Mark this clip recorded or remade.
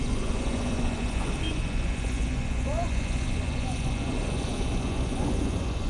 remade